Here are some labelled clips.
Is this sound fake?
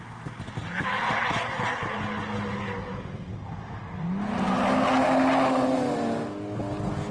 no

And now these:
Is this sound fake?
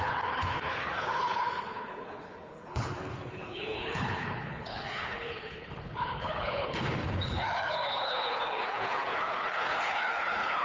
yes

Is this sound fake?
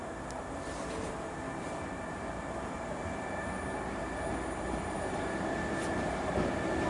no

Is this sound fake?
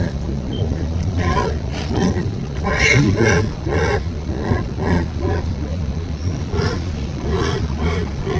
yes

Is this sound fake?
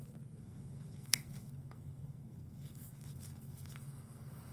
yes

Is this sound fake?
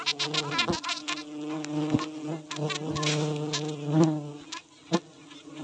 no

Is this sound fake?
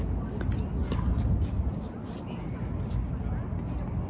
no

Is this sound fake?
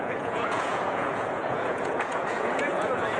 yes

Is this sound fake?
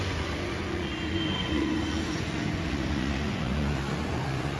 yes